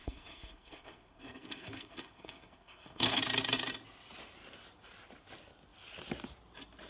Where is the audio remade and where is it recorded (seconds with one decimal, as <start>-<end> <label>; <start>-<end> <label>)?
0.0-3.2 remade; 3.2-6.9 recorded